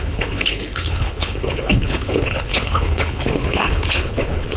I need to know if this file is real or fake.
fake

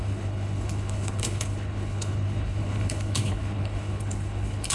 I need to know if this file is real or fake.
fake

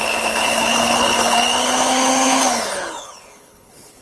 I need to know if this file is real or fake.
fake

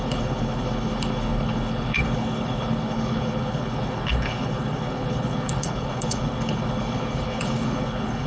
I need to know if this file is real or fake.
fake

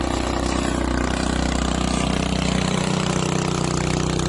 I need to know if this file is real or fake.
real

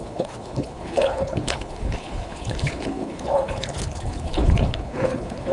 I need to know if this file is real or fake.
fake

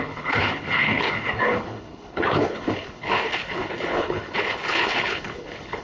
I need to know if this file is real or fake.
fake